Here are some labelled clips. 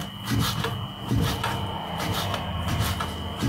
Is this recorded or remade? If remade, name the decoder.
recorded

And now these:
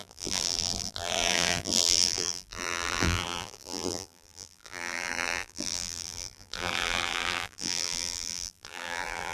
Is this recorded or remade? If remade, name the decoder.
remade, vocoder, BigVGAN v2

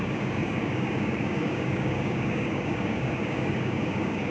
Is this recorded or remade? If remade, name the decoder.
remade, codec, DAC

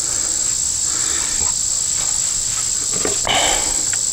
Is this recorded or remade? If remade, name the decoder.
recorded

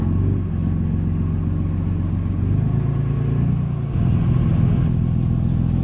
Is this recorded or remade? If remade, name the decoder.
recorded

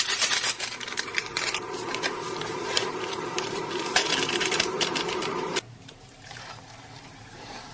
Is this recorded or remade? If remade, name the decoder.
remade, vocoder, BigVGAN v2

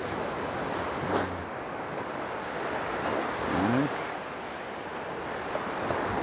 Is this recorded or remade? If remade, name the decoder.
recorded